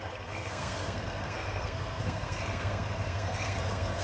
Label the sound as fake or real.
fake